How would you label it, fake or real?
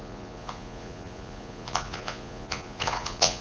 fake